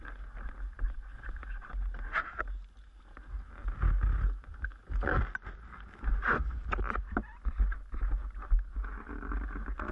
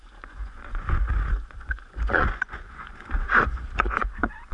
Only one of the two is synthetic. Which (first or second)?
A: second